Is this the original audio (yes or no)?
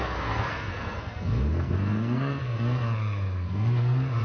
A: no